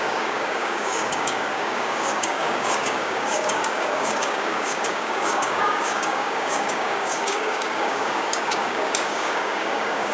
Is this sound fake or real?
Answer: fake